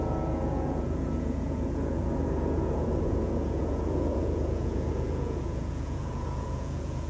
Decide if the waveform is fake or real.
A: fake